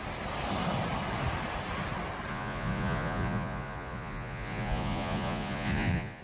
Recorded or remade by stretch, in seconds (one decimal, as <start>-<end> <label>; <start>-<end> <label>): 0.0-2.3 recorded; 2.3-6.2 remade